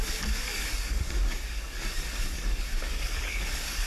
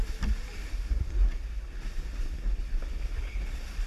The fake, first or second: first